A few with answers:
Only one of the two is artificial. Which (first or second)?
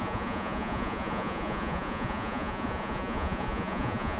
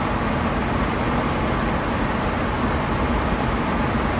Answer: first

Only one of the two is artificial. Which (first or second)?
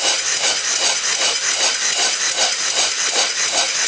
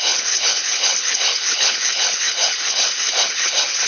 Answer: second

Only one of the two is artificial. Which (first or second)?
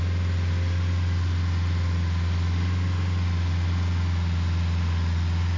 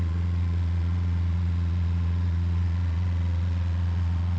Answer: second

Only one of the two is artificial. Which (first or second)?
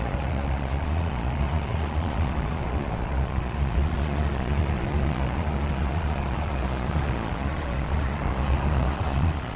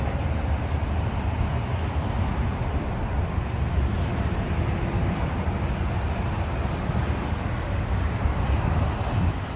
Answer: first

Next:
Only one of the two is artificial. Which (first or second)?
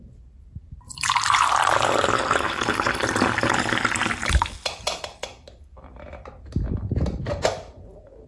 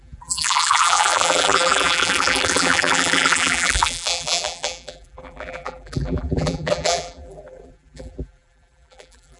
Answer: second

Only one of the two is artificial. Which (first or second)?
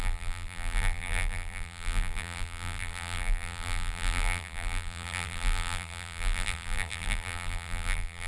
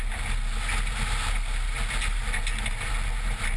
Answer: first